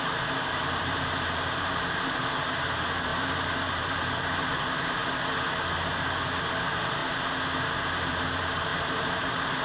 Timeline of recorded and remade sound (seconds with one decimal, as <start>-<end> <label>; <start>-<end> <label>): 0.0-5.0 remade; 5.0-6.5 recorded; 6.5-7.0 remade; 7.0-8.1 recorded; 8.1-9.6 remade